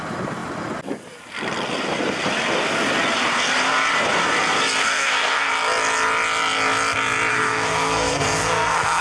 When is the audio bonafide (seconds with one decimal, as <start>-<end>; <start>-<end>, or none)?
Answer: 0.0-4.8; 5.5-7.3